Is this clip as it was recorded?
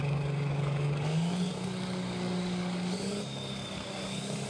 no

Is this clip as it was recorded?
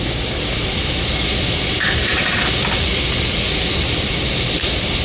yes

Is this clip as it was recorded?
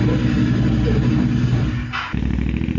yes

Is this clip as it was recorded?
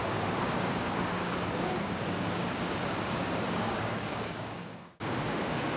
no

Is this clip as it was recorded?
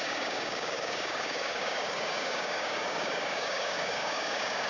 no